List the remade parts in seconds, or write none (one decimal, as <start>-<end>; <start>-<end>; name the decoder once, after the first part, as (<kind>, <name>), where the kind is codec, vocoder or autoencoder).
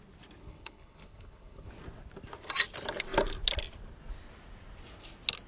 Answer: 0.4-1.7 (codec, HILCodec)